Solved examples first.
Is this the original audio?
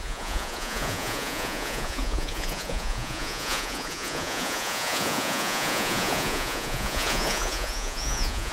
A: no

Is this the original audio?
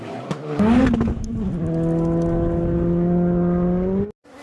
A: yes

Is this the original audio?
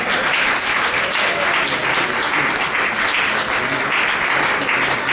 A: yes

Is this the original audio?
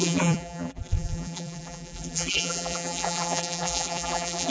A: no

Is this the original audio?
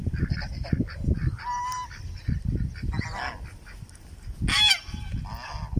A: yes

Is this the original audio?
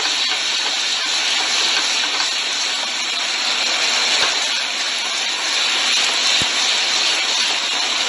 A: yes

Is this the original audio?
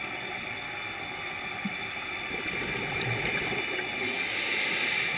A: yes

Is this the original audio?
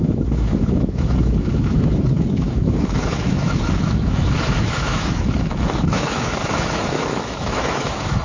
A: no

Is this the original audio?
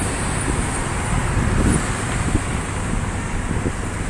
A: yes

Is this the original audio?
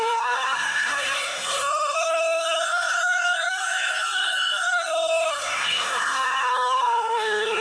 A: no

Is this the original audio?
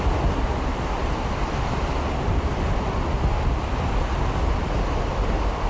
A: yes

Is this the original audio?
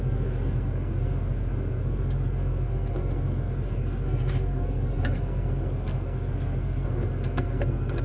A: no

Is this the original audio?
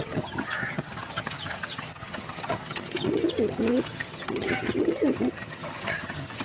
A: no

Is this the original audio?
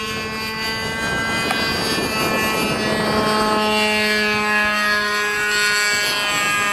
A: yes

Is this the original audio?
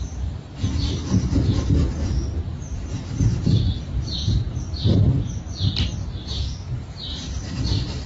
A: no